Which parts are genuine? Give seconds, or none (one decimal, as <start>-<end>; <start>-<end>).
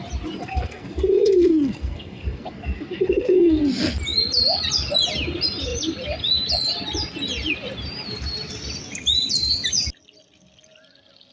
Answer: 0.0-0.4; 3.6-11.3